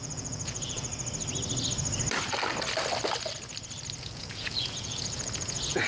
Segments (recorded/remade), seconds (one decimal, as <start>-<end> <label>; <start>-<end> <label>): 0.0-0.9 remade; 0.9-4.0 recorded; 4.0-5.9 remade